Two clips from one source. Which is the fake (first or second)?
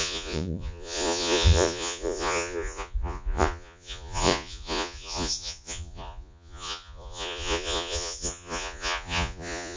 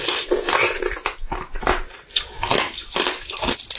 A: first